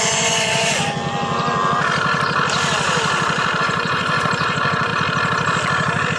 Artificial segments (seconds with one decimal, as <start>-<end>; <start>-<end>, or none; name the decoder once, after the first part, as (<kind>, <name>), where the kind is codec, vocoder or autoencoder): 0.0-1.0 (vocoder, Vocos); 3.6-4.9